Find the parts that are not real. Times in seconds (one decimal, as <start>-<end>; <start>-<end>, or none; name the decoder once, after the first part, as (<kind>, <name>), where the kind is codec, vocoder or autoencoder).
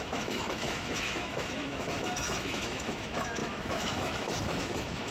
0.0-5.1 (autoencoder, DAC-VAE)